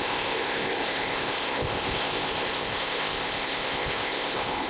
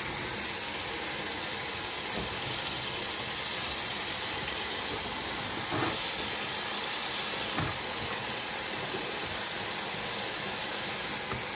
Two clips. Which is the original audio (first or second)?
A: second